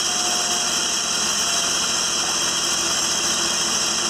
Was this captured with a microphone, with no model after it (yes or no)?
yes